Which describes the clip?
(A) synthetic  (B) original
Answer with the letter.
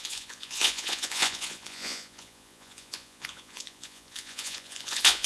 A